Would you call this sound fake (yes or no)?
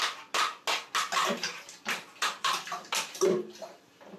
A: no